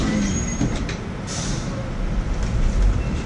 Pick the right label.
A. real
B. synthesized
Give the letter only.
B